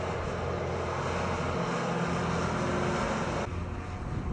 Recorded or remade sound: recorded